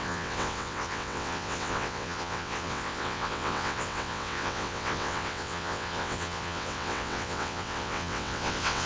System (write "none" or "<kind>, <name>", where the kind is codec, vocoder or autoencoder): vocoder, WaveNeXt